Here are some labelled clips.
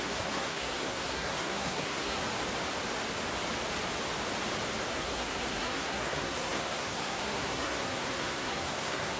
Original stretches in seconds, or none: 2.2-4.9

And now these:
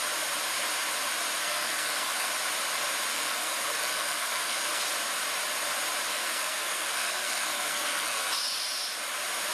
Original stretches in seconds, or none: 0.0-1.4; 2.3-3.1; 4.8-6.1; 8.3-9.5

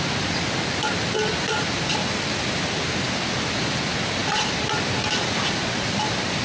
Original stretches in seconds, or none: 0.0-6.4

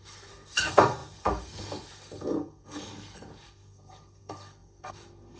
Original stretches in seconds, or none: none

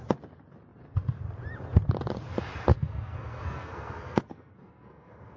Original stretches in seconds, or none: 0.0-2.7